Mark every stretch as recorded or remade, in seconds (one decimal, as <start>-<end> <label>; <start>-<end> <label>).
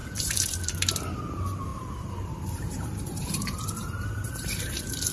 0.0-0.7 remade; 0.7-1.7 recorded; 1.7-4.6 remade; 4.6-5.1 recorded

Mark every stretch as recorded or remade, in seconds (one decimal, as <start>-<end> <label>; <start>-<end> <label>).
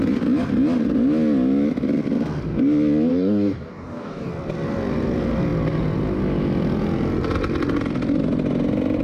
0.0-3.1 recorded; 3.1-4.3 remade; 4.3-9.0 recorded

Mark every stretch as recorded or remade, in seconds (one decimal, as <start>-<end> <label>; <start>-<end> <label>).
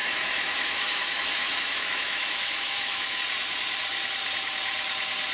0.0-3.2 remade; 3.2-5.3 recorded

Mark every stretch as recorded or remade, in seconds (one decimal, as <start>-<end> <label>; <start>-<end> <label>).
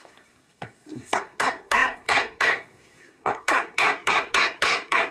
0.0-5.1 remade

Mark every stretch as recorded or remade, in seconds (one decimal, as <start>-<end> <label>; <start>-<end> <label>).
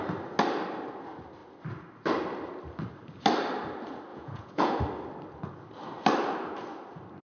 0.0-4.1 recorded; 4.1-4.8 remade; 4.8-7.2 recorded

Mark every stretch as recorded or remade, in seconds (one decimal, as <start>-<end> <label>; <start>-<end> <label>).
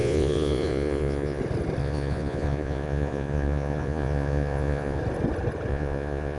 0.0-1.4 remade; 1.4-1.8 recorded; 1.8-5.0 remade; 5.0-5.7 recorded; 5.7-6.4 remade